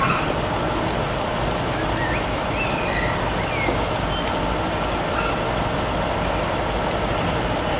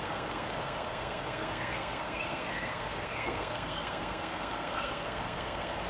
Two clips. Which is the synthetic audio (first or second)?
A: second